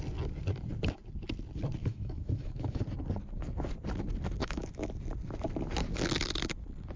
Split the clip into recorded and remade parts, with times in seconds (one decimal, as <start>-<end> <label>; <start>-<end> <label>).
0.0-1.8 recorded; 1.8-2.8 remade; 2.8-4.4 recorded; 4.4-4.9 remade; 4.9-7.0 recorded